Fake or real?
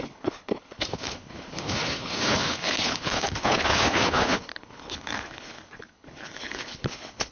fake